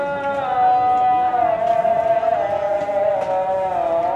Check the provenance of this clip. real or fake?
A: real